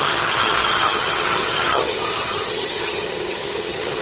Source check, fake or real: fake